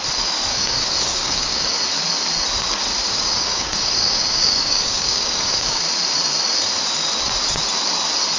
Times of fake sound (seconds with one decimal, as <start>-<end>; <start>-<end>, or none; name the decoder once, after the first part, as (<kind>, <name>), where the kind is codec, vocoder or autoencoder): 0.5-1.7 (codec, DAC); 3.1-5.8